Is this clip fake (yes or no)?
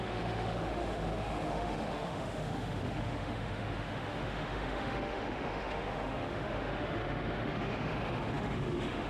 yes